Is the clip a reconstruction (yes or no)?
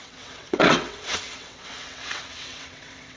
yes